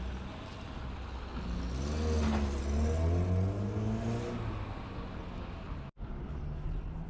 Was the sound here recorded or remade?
recorded